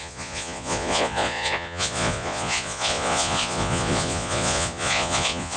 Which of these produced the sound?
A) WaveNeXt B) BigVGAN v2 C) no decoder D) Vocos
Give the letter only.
D